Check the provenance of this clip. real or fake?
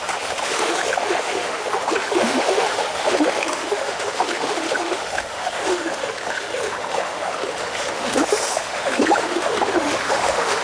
fake